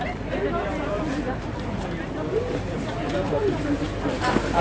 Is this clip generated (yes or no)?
yes